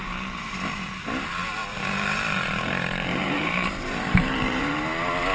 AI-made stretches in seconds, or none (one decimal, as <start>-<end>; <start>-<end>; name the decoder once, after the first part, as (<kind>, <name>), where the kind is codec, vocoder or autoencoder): 1.7-4.7 (vocoder, BigVGAN v2)